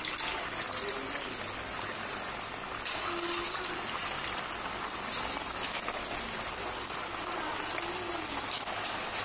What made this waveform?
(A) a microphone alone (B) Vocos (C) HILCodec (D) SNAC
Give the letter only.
A